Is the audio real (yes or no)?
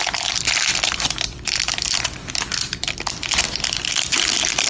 yes